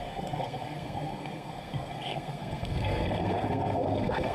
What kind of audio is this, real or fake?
fake